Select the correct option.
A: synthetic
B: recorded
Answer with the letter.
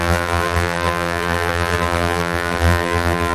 A